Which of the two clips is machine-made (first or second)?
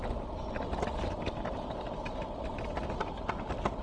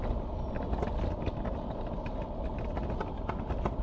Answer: first